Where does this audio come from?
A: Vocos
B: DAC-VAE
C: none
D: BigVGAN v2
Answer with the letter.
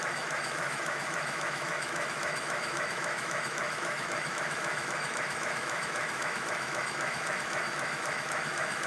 B